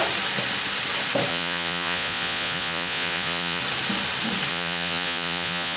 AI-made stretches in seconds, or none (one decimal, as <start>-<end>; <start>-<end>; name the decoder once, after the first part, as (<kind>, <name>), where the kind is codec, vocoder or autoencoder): 1.3-3.6 (vocoder, Vocos); 4.5-5.8